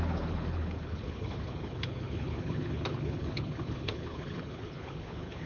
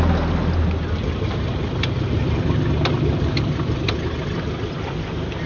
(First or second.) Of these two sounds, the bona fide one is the second